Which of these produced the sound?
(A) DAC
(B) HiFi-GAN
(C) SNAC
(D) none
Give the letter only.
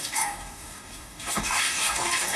A